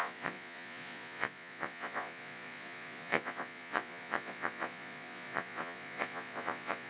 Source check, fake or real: fake